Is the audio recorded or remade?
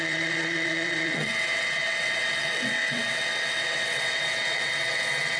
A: remade